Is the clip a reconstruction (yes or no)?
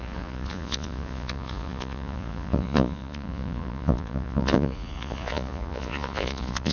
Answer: yes